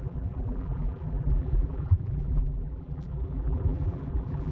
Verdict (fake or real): fake